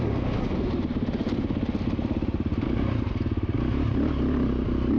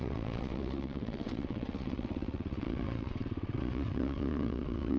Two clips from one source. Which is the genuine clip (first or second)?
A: first